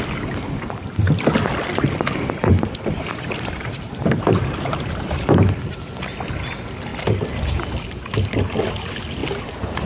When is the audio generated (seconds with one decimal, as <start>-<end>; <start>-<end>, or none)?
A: 2.5-5.2; 9.2-9.9